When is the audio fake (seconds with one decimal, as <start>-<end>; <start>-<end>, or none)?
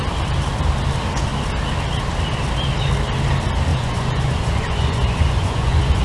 3.7-6.0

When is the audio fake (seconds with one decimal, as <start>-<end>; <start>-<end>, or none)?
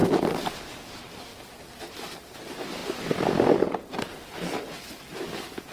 0.7-1.3; 1.8-2.8; 3.8-5.7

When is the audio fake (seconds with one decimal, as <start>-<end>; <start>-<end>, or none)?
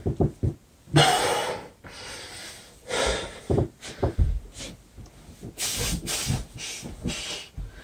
1.4-4.4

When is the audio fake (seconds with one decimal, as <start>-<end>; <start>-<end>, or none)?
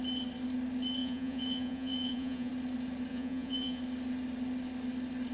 1.0-2.5; 3.1-3.8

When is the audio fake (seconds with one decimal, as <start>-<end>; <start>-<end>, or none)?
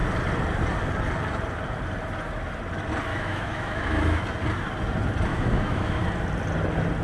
3.1-4.2; 5.3-6.0